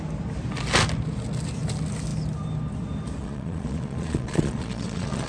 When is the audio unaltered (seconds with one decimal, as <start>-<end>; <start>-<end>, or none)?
0.0-3.2